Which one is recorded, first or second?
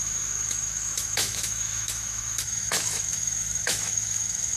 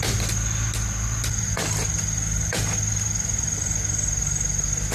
second